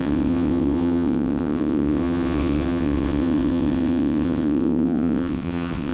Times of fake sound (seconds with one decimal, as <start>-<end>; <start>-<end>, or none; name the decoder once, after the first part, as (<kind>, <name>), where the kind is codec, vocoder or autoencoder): 0.0-5.9 (vocoder, WaveNeXt)